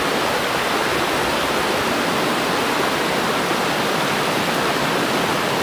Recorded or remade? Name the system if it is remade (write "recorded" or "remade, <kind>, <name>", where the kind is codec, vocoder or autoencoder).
recorded